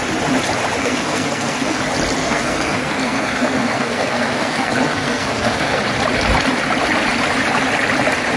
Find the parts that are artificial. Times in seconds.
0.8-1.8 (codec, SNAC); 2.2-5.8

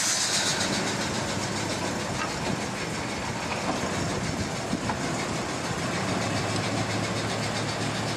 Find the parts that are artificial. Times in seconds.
0.5-1.9 (vocoder, BigVGAN v2)

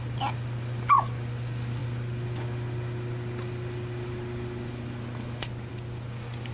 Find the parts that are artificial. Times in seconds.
none

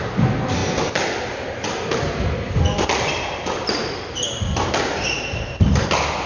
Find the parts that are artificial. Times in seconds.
none

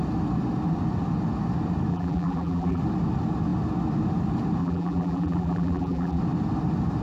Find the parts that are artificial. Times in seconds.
1.9-2.8 (vocoder, BigVGAN v2); 4.6-6.2